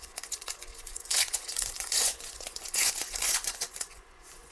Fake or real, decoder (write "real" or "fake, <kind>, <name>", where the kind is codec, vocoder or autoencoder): fake, vocoder, Vocos